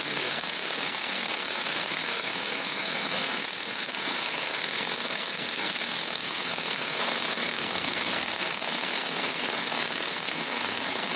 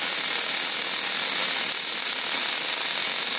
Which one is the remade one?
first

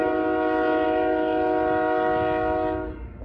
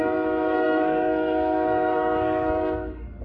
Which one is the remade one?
second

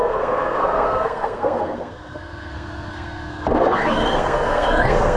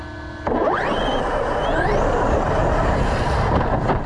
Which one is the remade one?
first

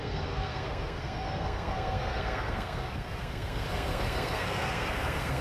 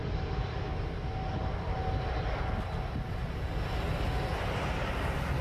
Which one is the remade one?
first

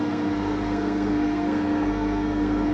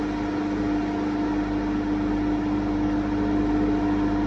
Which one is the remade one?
first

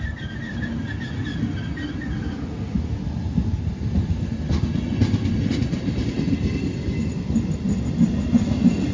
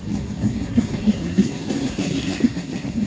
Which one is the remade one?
second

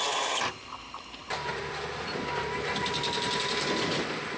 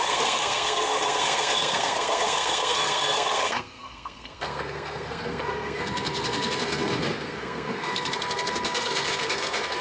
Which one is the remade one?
second